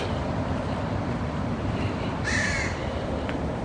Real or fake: fake